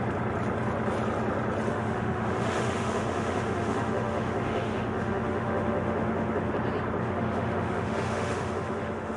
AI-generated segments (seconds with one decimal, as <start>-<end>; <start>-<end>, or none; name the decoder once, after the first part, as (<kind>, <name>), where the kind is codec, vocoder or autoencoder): 1.7-6.5 (autoencoder, DAC-VAE); 7.0-9.2